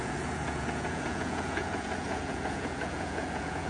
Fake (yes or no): yes